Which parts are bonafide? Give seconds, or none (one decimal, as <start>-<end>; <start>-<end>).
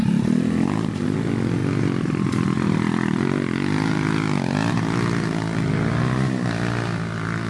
0.0-7.5